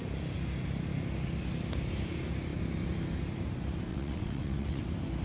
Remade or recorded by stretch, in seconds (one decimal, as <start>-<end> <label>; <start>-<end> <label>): 0.0-3.9 recorded; 3.9-4.8 remade; 4.8-5.2 recorded